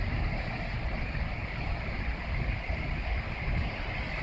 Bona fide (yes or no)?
yes